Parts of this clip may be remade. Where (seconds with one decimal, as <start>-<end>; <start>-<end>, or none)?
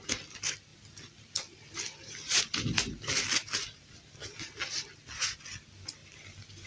none